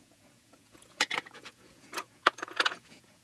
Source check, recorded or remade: remade